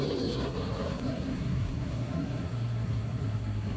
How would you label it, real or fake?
fake